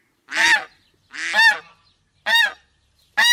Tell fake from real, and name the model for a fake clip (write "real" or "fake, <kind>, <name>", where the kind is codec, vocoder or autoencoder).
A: real